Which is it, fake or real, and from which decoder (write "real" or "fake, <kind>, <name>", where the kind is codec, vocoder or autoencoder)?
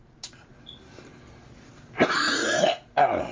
real